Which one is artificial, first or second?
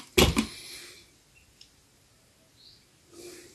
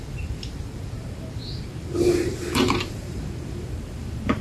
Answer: second